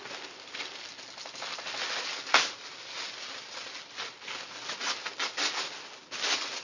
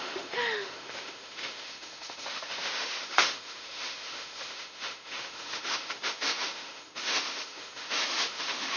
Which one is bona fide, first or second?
first